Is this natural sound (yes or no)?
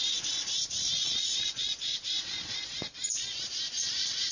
no